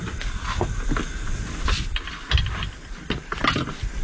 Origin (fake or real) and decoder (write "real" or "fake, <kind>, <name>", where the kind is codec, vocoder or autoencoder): real